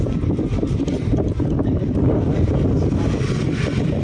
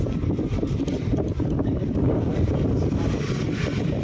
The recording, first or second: first